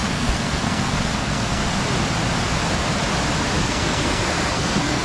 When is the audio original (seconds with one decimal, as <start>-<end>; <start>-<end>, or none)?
1.6-3.6